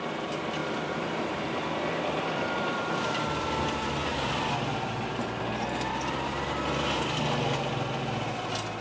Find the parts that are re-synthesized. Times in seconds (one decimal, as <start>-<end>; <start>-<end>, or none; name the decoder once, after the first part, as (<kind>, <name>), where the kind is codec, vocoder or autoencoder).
0.6-5.4 (vocoder, BigVGAN v2); 5.9-6.5